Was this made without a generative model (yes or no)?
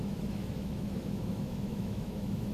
no